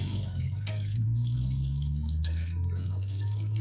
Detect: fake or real fake